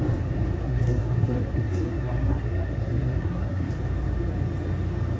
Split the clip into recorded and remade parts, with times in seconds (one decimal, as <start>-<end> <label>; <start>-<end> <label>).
0.0-0.6 recorded; 0.6-3.7 remade; 3.7-5.2 recorded